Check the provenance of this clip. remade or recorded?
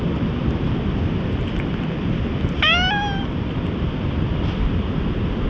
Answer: recorded